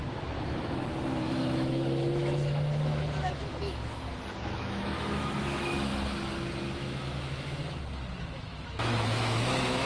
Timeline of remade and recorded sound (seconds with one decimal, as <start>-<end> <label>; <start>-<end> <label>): 0.0-5.9 remade; 5.9-6.6 recorded; 6.6-7.6 remade; 7.6-8.2 recorded; 8.2-9.9 remade